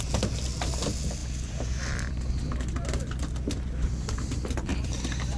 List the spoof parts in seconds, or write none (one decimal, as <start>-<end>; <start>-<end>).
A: 1.2-2.1